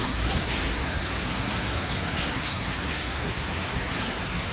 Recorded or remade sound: remade